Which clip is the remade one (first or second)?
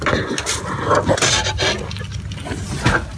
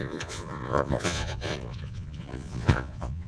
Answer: second